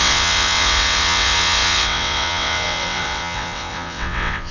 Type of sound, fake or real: fake